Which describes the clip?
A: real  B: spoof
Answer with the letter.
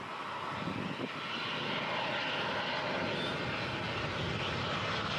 A